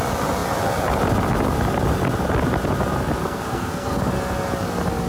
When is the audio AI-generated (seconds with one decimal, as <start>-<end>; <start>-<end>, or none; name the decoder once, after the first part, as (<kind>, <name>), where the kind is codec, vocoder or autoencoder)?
3.2-4.0 (codec, SNAC)